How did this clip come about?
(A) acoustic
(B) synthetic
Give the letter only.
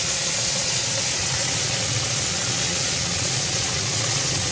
B